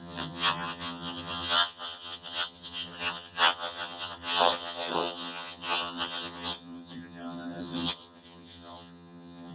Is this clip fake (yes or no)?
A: yes